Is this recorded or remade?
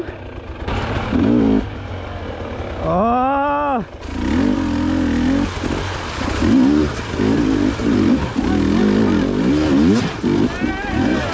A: recorded